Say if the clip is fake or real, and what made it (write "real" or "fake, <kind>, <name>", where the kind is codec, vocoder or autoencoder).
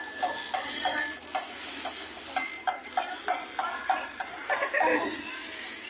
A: real